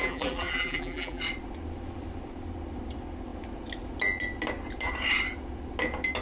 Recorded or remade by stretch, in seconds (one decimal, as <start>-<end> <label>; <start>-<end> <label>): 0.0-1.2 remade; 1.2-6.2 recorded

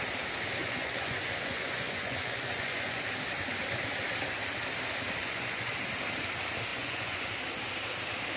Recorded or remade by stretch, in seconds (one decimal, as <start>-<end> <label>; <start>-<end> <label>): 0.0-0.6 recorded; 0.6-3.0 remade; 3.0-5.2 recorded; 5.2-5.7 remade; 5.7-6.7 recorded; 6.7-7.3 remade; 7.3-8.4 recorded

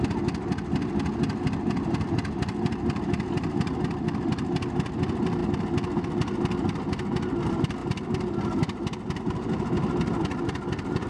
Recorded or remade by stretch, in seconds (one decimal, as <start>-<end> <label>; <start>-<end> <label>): 0.0-5.4 remade; 5.4-6.0 recorded; 6.0-7.8 remade; 7.8-9.2 recorded; 9.2-11.1 remade